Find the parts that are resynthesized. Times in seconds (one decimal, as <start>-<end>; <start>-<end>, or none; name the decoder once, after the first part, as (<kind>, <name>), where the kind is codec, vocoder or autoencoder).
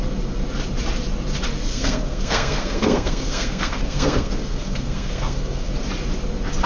1.7-5.7 (codec, SNAC)